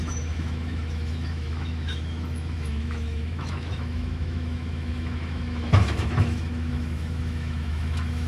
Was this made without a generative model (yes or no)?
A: no